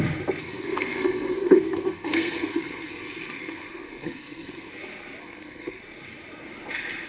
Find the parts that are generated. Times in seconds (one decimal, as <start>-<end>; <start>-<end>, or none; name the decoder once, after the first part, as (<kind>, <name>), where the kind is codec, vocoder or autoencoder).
0.4-4.7 (codec, SNAC); 5.2-5.8